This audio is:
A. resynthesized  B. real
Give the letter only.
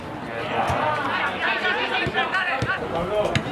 B